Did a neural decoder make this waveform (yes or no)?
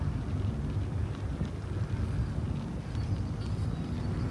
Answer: no